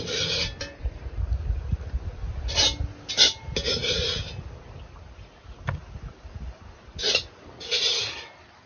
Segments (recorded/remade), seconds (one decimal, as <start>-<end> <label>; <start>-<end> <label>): 0.0-8.7 recorded